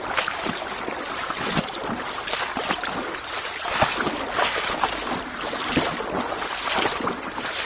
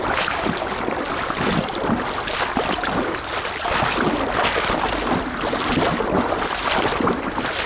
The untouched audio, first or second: second